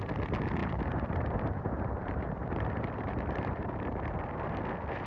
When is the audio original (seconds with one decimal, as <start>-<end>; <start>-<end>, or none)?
0.0-0.6; 3.7-5.1